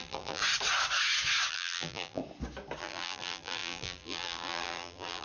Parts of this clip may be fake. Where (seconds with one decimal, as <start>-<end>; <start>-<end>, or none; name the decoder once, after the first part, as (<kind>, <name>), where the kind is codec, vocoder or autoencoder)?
0.0-0.4 (vocoder, BigVGAN v2); 1.5-2.2; 2.8-5.2